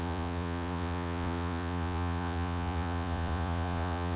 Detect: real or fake fake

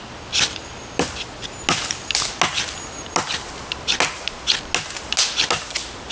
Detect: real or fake real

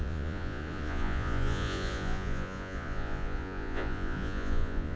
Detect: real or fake fake